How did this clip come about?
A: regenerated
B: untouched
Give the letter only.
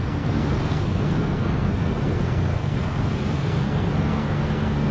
A